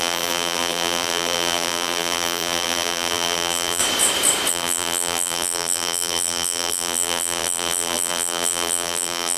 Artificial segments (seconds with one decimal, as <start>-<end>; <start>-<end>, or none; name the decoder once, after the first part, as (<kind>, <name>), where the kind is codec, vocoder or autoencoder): 0.0-3.8 (vocoder, BigVGAN v2); 4.5-9.4